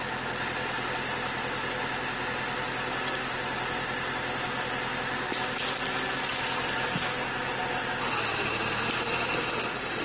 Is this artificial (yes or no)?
no